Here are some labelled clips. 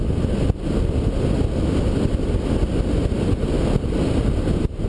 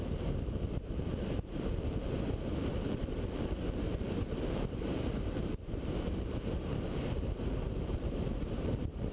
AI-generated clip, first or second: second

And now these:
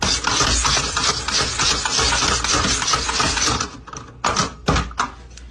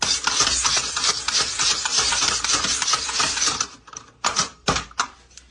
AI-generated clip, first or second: second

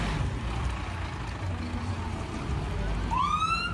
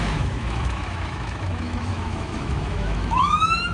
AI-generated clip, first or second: second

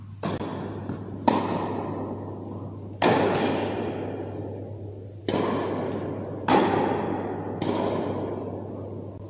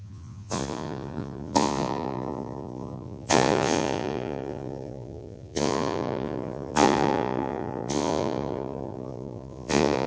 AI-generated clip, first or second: second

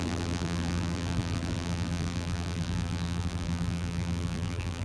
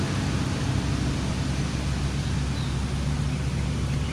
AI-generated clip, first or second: first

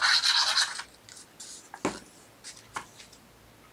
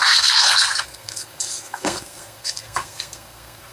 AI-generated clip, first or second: second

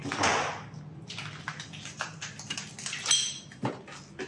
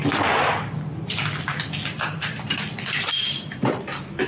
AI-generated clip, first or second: second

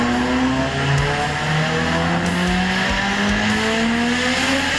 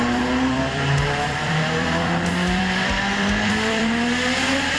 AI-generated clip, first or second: second